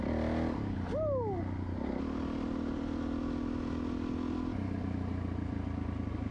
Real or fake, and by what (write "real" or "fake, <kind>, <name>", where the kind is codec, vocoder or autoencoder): real